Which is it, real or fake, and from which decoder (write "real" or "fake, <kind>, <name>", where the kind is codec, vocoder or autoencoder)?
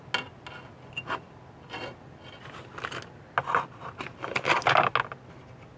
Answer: real